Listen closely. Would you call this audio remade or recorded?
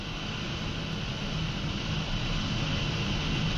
recorded